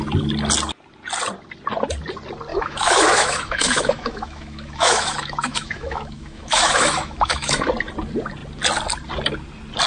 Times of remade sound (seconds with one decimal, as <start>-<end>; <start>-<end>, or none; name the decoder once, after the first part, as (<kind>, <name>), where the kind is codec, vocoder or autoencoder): 2.5-7.7 (autoencoder, DAC-VAE)